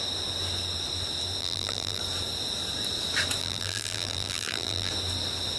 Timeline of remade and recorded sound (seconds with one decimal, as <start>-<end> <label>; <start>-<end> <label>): 0.0-1.4 recorded; 1.4-2.0 remade; 2.0-3.4 recorded; 3.4-4.9 remade; 4.9-5.6 recorded